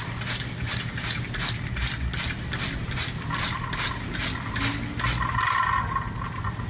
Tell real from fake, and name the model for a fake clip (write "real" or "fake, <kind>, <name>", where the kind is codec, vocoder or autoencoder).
real